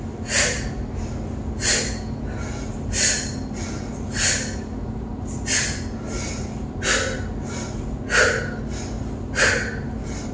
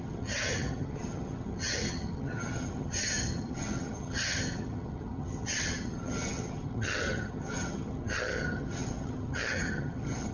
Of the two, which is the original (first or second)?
first